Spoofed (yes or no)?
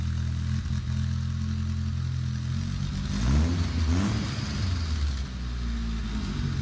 no